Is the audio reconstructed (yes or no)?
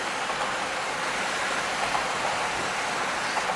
no